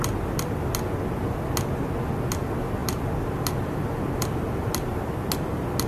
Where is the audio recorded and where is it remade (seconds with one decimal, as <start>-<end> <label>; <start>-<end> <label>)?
0.0-5.9 recorded